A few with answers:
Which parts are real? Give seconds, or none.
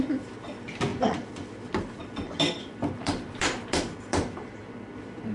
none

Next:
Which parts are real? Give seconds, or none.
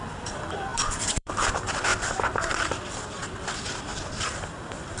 1.9-2.5; 3.9-4.4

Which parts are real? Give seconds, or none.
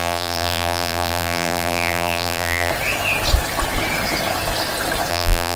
2.7-5.1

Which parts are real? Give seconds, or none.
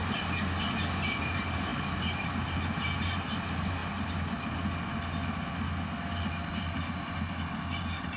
0.0-1.2; 3.8-8.2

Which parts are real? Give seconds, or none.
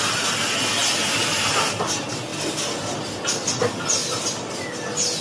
0.0-5.2